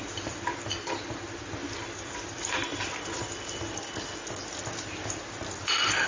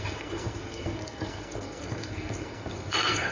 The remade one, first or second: second